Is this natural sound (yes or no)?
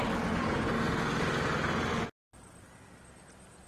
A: yes